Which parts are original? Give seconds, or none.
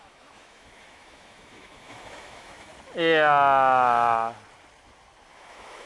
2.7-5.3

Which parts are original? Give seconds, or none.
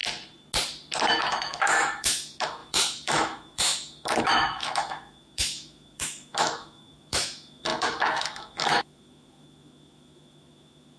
0.0-1.2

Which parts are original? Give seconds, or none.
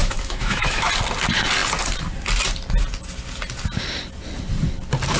0.9-5.2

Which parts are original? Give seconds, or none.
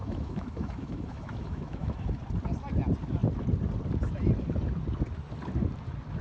2.2-6.2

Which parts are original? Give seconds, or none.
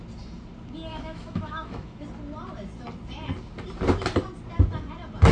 0.0-0.9; 2.0-5.3